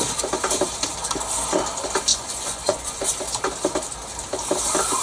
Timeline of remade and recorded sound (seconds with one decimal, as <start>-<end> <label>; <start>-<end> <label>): 0.0-2.1 recorded; 2.1-3.1 remade; 3.1-5.0 recorded